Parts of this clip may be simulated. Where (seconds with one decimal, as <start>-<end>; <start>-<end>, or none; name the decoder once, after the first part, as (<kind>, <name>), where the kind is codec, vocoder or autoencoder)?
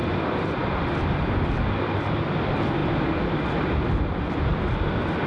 none